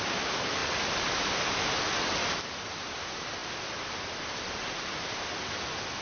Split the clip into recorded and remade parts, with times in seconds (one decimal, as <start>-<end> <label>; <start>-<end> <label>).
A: 0.0-6.0 recorded

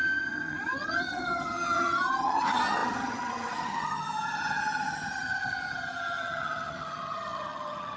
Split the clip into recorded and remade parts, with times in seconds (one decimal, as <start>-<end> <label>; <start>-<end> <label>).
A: 0.0-8.0 remade

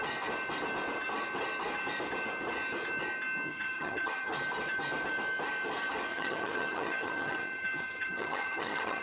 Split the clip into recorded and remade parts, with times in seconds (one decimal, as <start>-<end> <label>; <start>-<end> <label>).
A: 0.0-3.5 recorded; 3.5-4.3 remade; 4.3-6.1 recorded; 6.1-9.0 remade